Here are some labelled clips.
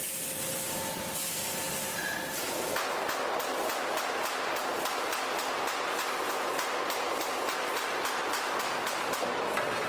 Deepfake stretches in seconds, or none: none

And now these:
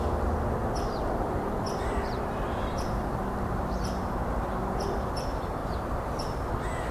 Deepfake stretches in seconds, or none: 0.6-3.5 (vocoder, BigVGAN v2); 5.6-6.5

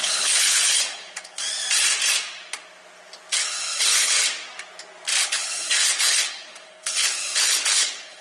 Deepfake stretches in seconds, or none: 0.0-1.4 (codec, HILCodec); 3.4-4.2; 5.2-8.2

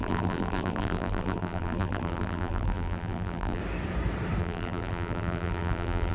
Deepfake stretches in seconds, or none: 0.0-3.6 (vocoder, BigVGAN v2); 4.4-6.1

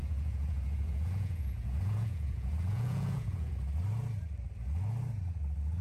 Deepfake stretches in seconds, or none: 0.0-3.5 (vocoder, Vocos)

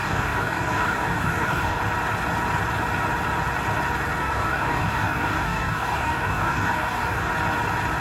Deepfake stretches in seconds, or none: 0.0-1.8 (codec, DAC); 4.2-7.3

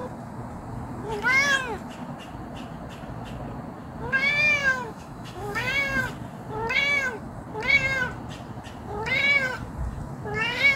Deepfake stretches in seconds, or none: 4.6-5.7 (autoencoder, DAC-VAE)